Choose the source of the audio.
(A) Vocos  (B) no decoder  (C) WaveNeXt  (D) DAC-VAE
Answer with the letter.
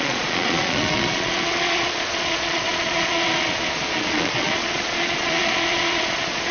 A